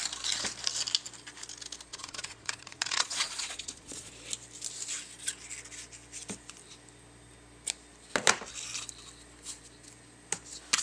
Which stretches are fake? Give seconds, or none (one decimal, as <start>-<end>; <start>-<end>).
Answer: 1.9-4.1